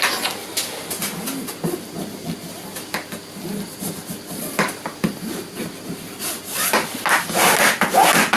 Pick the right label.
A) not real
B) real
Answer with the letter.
B